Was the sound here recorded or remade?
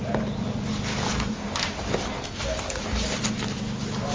recorded